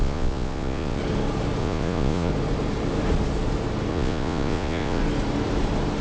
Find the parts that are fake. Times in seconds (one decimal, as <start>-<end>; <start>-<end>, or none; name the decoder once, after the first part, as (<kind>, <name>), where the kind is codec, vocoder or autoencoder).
0.0-1.0 (vocoder, Vocos); 1.6-2.3; 3.9-5.0